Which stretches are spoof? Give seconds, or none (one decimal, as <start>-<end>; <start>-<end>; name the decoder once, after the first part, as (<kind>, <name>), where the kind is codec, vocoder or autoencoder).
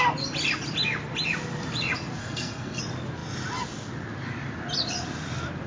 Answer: 2.2-2.8 (codec, SNAC)